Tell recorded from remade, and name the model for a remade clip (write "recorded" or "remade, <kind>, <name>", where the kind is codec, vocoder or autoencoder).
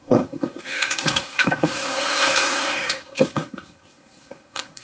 remade, codec, SNAC